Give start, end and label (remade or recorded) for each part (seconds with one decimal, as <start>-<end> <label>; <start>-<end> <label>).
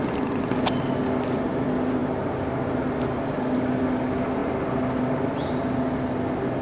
0.0-6.6 recorded